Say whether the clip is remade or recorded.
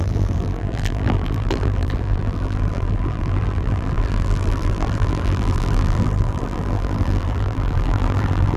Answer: remade